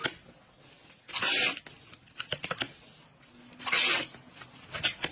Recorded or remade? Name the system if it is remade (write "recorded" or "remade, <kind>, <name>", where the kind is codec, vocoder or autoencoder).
recorded